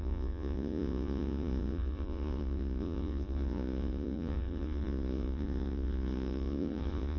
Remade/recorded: remade